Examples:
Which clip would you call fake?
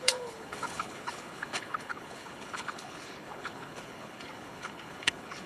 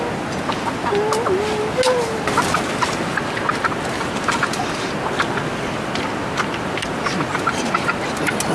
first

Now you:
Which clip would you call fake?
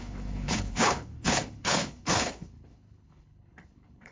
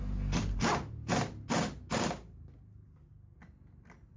first